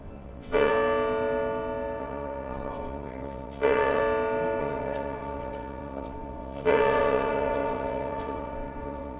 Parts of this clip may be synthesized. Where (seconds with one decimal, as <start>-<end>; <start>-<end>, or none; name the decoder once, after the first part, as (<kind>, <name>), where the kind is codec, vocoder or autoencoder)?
0.0-0.7 (vocoder, WaveNeXt); 2.0-4.0; 4.6-9.2